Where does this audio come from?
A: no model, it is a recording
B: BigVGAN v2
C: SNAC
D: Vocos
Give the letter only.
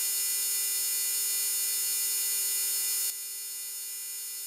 A